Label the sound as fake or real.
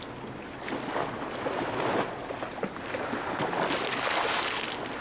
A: real